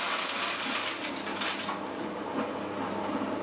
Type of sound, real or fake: real